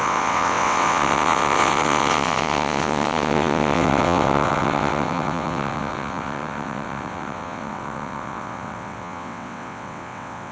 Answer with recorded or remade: remade